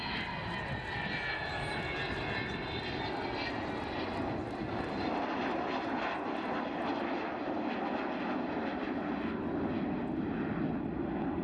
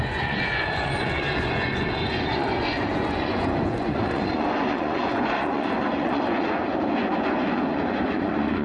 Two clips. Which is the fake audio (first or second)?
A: second